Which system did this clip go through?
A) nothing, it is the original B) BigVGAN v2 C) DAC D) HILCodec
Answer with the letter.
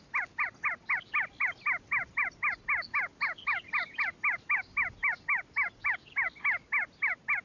A